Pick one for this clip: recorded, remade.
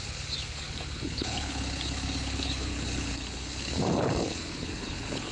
remade